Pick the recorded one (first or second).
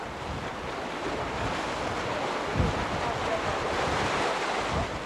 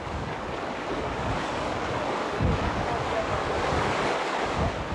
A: first